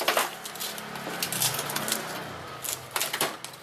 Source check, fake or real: real